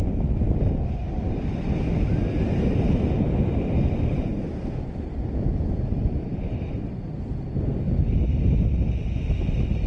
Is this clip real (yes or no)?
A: yes